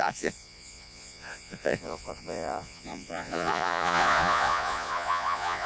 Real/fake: fake